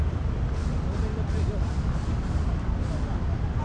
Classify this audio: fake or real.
real